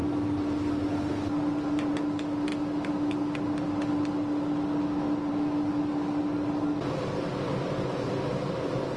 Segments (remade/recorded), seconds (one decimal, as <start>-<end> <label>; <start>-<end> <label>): 0.0-9.0 recorded